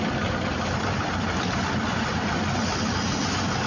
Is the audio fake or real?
real